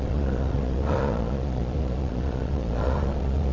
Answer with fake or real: fake